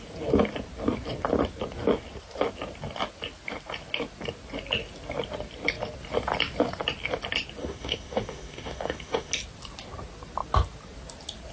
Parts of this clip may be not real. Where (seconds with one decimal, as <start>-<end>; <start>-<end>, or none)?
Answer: 7.6-9.3